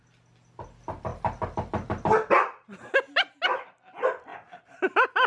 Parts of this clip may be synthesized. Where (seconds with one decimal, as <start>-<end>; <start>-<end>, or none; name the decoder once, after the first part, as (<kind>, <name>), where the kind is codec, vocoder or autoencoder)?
none